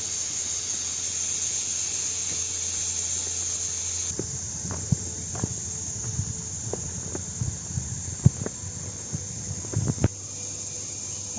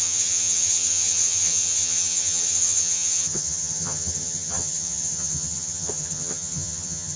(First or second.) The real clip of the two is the first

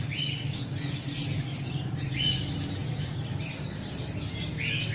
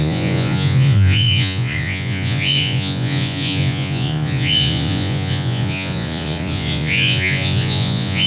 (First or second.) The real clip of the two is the first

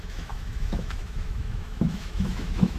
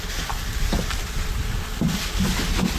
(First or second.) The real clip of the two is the second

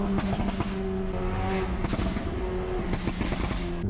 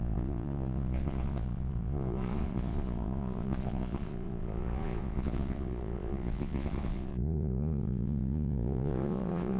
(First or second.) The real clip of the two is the first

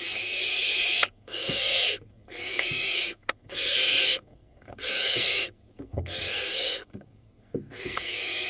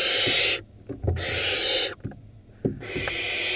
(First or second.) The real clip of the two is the second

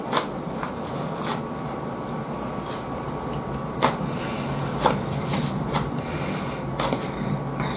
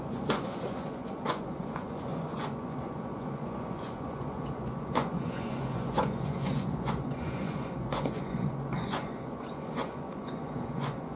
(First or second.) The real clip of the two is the first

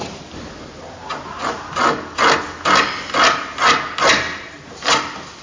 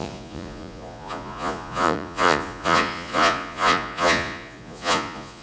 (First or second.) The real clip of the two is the first